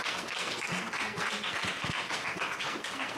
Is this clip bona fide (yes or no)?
no